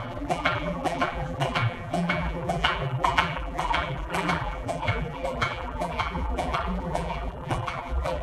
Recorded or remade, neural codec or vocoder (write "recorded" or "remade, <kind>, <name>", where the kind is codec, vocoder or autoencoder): remade, vocoder, BigVGAN v2